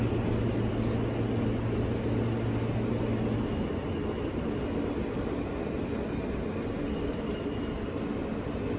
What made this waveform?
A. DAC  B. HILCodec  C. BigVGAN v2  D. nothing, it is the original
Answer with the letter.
D